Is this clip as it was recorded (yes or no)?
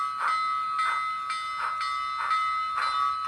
yes